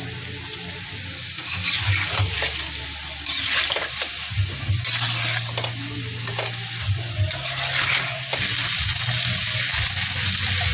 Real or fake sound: real